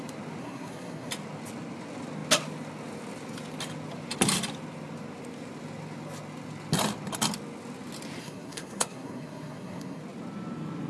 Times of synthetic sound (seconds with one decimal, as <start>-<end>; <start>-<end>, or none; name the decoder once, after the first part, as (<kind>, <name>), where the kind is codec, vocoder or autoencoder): 0.4-1.1 (codec, SNAC); 8.2-10.0